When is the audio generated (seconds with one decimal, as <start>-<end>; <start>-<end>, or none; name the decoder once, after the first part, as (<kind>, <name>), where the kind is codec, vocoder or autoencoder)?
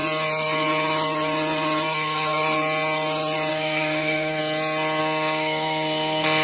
3.5-4.4 (codec, SNAC); 5.0-6.4